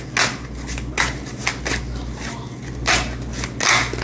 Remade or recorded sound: recorded